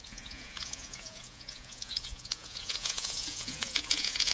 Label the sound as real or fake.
fake